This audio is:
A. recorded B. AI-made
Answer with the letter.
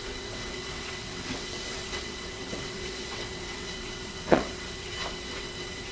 B